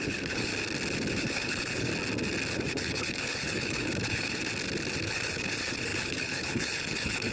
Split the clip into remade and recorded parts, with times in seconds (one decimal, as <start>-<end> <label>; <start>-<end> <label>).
0.0-0.5 remade; 0.5-1.2 recorded; 1.2-1.9 remade; 1.9-2.5 recorded; 2.5-4.4 remade; 4.4-5.0 recorded; 5.0-7.3 remade